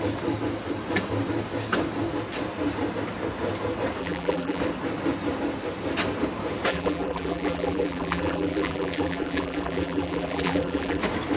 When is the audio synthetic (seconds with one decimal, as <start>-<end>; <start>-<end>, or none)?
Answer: 4.0-4.6; 6.7-11.0